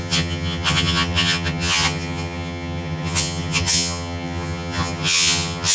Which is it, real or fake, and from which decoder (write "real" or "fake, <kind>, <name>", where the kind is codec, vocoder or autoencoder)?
fake, vocoder, HiFi-GAN